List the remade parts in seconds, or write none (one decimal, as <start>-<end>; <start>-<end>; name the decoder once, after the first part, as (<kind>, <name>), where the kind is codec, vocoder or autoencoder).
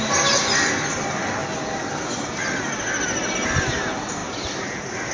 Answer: none